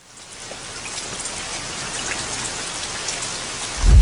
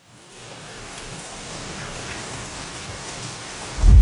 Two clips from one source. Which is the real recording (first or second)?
first